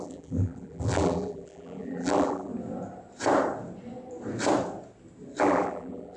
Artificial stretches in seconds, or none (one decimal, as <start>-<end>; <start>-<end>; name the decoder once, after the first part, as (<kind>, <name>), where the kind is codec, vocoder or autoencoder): 0.0-2.5 (vocoder, BigVGAN v2); 5.4-6.2